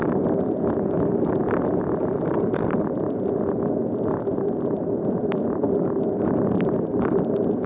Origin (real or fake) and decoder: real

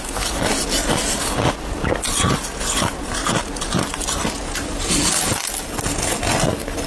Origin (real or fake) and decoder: real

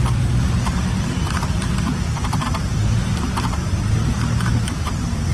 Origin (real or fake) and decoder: fake, vocoder, BigVGAN v2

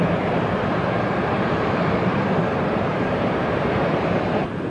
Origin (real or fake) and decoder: fake, vocoder, BigVGAN v2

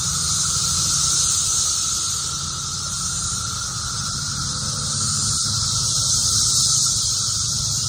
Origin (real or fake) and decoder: fake, vocoder, BigVGAN v2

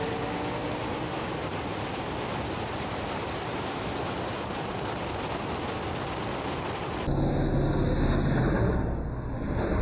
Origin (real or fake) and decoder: real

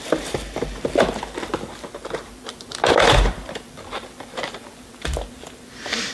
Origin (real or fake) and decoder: fake, vocoder, BigVGAN v2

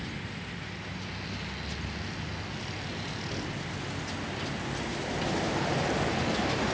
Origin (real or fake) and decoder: real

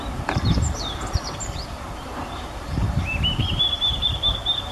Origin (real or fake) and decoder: fake, vocoder, BigVGAN v2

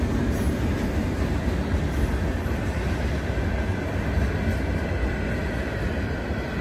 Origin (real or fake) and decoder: real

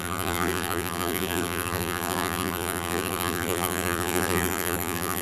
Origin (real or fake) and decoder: fake, vocoder, BigVGAN v2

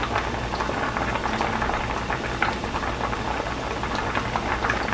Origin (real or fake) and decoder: real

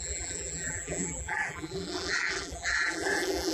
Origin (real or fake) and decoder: fake, vocoder, BigVGAN v2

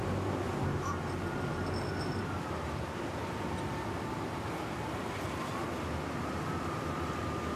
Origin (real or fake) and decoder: real